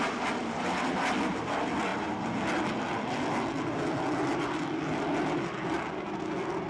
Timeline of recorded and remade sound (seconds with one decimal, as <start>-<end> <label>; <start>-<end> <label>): 0.0-6.7 recorded